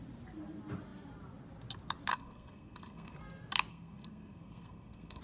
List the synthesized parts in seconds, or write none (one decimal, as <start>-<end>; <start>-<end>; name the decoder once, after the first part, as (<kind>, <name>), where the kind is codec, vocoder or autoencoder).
2.1-3.2 (codec, SNAC); 3.7-5.2